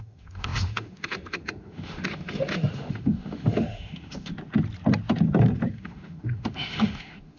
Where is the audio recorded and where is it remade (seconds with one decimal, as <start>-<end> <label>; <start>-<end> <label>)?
0.0-4.3 remade; 4.3-5.7 recorded; 5.7-7.4 remade